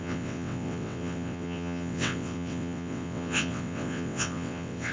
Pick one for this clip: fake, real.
fake